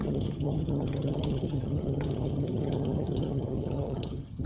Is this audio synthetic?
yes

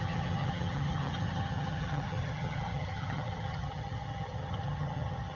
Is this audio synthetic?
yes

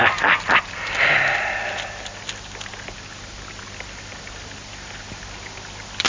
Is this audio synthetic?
no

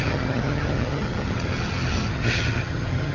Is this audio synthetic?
yes